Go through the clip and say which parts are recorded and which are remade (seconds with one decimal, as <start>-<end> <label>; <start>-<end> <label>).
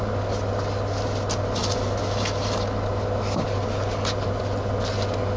0.0-5.4 recorded